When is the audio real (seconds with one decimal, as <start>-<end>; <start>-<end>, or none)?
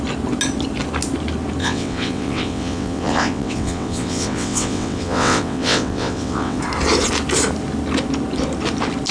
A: 0.0-1.6; 6.6-9.1